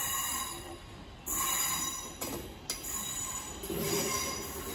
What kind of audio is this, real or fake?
real